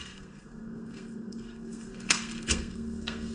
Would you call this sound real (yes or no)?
no